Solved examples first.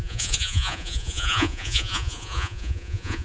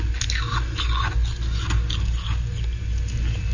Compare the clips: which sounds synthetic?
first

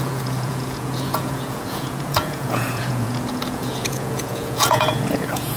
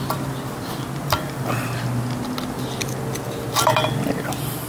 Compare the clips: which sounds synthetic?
first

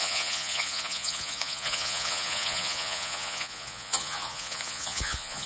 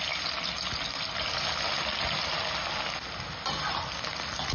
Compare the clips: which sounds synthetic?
first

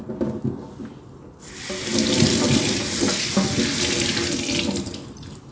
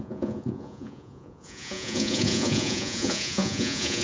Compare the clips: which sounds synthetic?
second